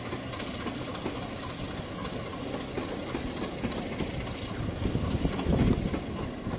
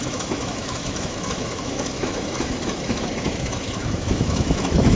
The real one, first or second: first